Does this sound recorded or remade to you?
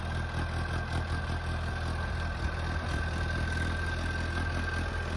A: recorded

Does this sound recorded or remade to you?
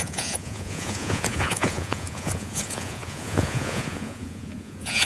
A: remade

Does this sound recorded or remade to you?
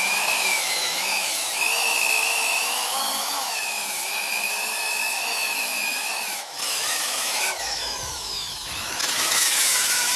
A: remade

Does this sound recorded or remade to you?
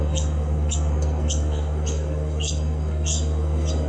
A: remade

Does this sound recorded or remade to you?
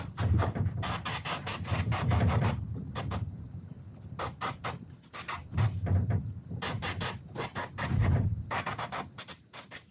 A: remade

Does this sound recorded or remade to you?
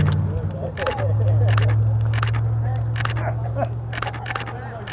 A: recorded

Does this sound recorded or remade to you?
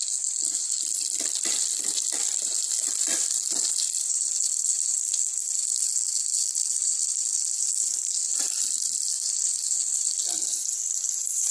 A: recorded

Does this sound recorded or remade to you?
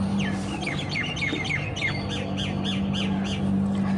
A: recorded